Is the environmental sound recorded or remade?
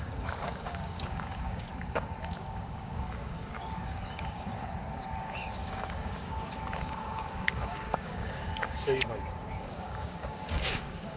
remade